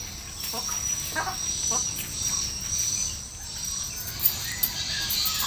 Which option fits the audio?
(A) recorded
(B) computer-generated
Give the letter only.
A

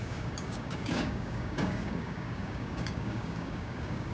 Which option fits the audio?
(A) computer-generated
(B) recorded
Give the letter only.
A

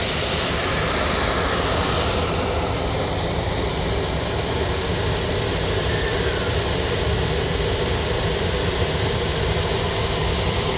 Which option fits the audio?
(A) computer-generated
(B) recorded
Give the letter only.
B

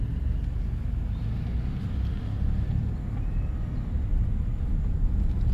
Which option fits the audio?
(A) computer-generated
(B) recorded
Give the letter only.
B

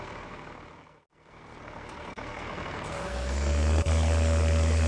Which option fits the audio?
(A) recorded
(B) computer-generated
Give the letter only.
B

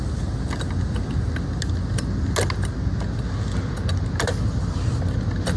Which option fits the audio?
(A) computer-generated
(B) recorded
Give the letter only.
B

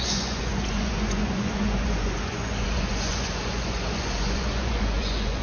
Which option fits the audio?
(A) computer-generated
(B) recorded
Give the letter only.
A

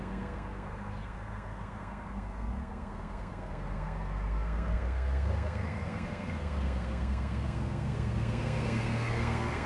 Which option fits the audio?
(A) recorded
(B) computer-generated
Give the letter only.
B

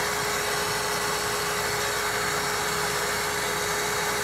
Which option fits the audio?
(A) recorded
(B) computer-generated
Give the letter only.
A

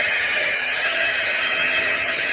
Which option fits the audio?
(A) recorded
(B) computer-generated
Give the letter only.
B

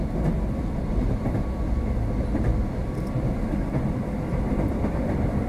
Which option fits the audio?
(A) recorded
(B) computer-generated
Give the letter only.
A